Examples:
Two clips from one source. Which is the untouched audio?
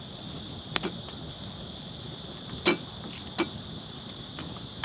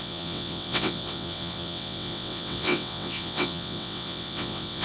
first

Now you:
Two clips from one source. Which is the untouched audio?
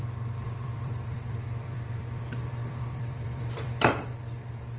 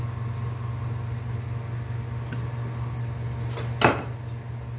second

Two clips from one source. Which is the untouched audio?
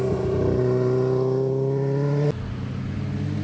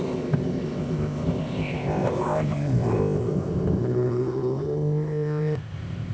first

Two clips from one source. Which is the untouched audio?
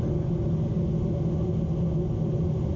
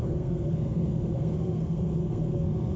first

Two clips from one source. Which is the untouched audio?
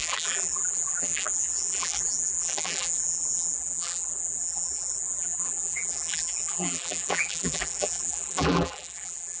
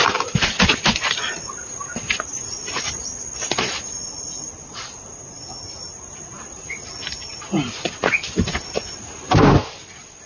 second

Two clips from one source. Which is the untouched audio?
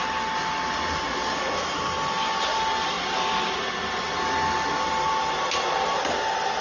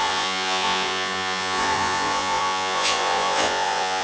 first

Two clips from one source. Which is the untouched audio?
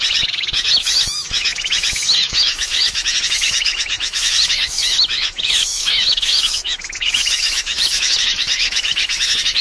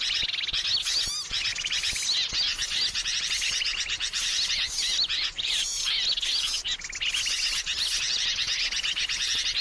second